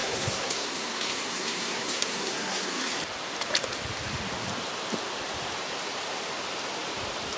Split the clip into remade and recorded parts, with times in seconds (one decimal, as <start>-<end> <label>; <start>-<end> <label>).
0.0-3.0 remade; 3.0-7.4 recorded